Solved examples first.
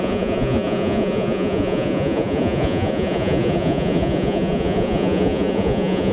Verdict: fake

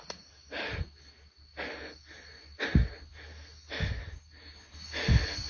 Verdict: real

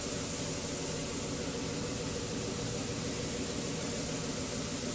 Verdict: real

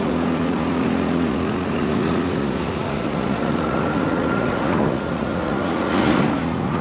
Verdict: fake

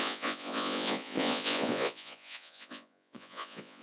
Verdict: fake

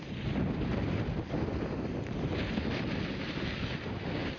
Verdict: real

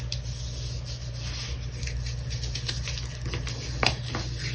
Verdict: real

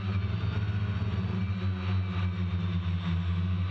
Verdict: real